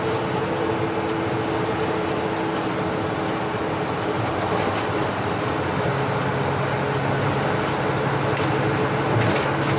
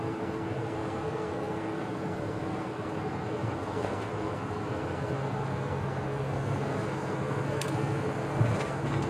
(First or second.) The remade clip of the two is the second